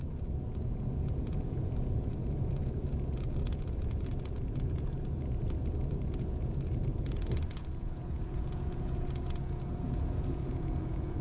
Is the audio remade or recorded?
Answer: remade